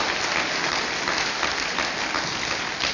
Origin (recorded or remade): recorded